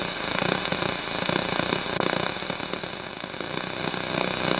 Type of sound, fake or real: real